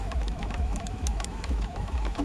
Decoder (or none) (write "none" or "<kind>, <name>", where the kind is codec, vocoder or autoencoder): autoencoder, DAC-VAE